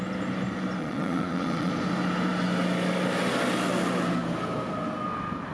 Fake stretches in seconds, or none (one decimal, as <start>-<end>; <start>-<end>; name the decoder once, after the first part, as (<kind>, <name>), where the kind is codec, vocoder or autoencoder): 0.8-1.7 (vocoder, Vocos)